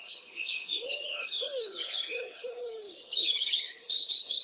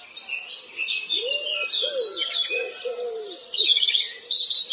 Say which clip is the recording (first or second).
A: second